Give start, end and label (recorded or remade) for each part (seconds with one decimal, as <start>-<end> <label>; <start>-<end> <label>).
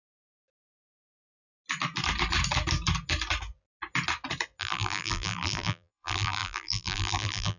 0.0-4.6 recorded; 4.6-7.6 remade